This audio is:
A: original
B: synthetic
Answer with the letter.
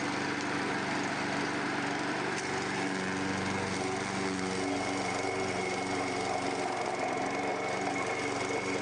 A